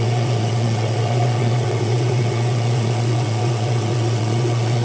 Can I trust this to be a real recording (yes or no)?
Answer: no